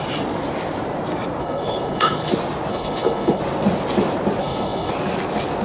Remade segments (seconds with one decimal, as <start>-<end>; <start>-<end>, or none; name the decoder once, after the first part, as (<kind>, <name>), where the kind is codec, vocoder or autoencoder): 1.4-2.3 (codec, HILCodec); 2.7-3.4; 4.4-4.9